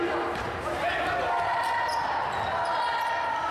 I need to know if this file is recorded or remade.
recorded